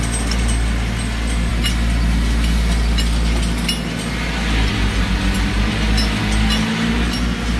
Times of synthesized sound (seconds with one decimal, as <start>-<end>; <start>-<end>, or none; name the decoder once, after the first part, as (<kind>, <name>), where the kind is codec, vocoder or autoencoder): none